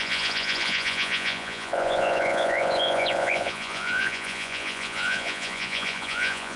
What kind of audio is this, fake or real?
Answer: fake